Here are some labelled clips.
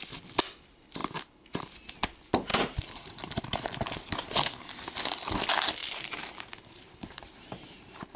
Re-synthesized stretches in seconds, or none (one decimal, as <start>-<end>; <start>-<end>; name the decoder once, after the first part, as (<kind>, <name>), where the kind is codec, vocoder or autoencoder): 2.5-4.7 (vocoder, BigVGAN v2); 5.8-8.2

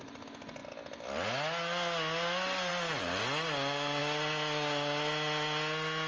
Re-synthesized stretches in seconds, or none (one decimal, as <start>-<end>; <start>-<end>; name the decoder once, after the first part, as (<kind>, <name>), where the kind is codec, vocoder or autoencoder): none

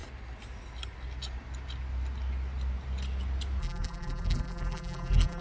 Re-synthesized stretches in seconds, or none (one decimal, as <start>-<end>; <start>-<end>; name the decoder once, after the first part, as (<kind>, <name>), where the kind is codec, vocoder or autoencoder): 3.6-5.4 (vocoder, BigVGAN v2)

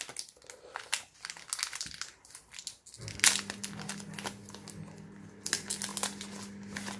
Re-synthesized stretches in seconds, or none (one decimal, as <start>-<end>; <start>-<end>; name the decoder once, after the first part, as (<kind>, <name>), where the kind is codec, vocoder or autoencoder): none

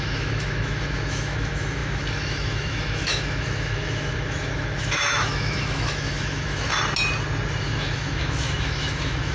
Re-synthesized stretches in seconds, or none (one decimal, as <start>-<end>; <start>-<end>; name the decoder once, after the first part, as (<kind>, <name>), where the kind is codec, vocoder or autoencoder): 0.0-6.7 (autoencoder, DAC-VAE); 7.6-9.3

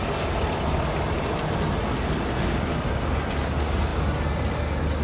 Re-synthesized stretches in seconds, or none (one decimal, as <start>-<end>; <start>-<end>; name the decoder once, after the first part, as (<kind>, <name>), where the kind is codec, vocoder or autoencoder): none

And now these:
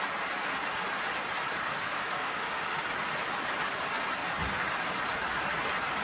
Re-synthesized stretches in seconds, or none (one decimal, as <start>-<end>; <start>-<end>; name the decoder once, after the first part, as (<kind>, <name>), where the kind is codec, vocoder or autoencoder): 1.6-2.9 (autoencoder, DAC-VAE)

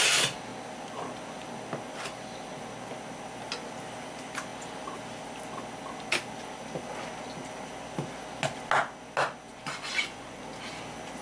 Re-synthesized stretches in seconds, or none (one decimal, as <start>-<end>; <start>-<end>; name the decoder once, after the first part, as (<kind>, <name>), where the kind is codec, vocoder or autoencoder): 9.5-10.4 (vocoder, Vocos)